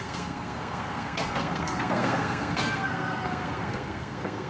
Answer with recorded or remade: remade